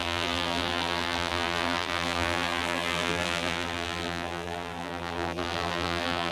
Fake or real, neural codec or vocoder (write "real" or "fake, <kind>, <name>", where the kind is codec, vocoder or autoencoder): fake, vocoder, BigVGAN v2